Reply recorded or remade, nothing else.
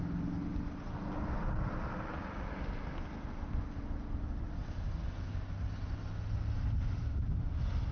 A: recorded